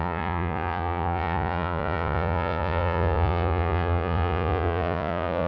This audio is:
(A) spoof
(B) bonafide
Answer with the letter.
A